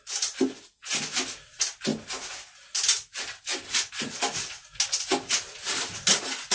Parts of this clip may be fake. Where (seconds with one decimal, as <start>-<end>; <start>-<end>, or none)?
none